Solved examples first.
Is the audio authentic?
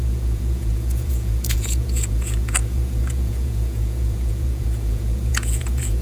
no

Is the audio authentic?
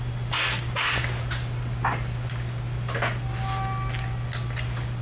yes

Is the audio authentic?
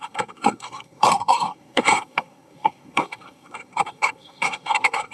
no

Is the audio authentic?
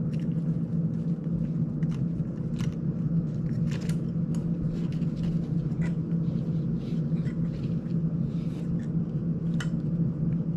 yes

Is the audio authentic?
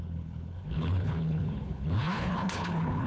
no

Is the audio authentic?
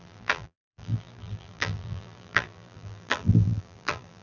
no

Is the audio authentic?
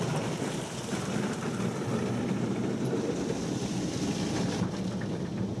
no